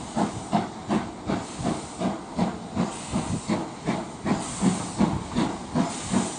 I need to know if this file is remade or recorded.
recorded